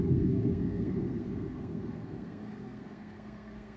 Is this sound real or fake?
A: fake